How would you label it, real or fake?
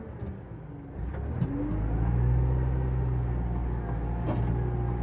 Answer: real